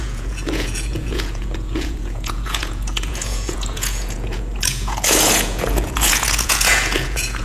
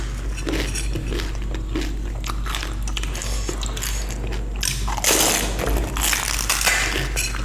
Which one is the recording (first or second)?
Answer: second